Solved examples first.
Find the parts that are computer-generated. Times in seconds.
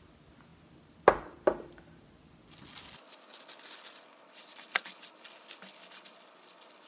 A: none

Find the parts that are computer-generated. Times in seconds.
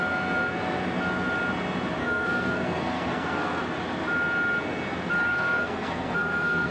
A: 2.0-3.6 (codec, SNAC); 5.3-6.7